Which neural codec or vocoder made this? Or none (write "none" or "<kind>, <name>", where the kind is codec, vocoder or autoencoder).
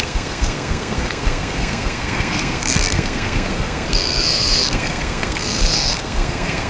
codec, SNAC